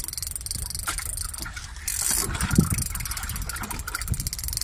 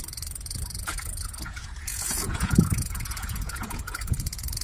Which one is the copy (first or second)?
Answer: second